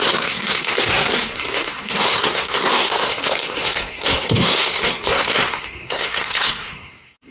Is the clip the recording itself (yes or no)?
no